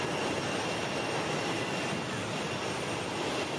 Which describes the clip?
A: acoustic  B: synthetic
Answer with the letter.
A